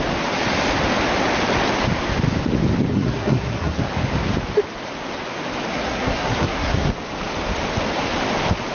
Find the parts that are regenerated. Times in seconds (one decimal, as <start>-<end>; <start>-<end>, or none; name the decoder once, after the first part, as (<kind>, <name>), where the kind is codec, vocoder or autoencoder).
2.9-3.8 (codec, SNAC); 5.7-6.9